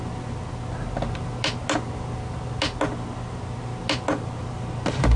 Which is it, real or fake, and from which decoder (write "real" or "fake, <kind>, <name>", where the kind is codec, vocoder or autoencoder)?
real